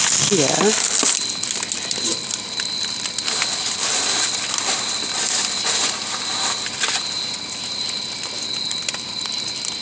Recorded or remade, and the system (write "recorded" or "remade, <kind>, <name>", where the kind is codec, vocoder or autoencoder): recorded